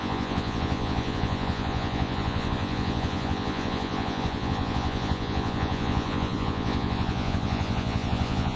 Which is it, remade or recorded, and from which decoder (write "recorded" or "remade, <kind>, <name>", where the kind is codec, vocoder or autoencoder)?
remade, vocoder, Vocos